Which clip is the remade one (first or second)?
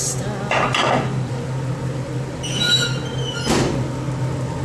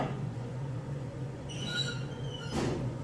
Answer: second